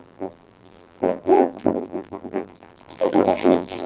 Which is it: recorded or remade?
remade